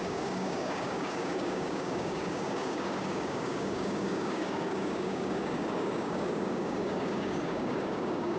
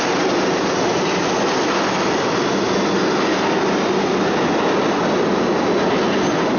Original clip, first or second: second